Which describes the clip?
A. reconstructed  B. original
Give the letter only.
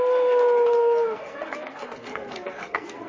A